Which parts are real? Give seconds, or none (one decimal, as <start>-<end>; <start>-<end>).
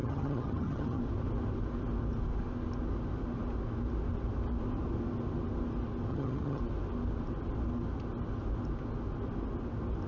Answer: 1.0-6.1; 6.6-10.1